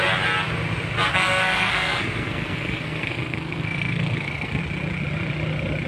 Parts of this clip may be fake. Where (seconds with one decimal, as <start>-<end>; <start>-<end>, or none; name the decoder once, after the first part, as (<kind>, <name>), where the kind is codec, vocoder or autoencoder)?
1.1-4.6 (codec, SNAC)